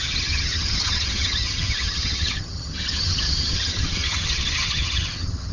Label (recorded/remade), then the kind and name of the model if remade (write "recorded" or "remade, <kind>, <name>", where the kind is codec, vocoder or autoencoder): remade, vocoder, HiFi-GAN